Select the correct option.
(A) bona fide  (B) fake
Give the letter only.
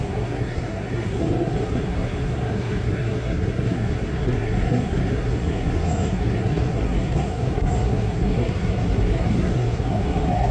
B